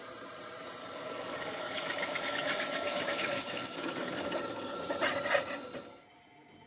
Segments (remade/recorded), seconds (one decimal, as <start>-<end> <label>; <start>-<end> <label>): 0.0-0.8 recorded; 0.8-4.8 remade; 4.8-6.7 recorded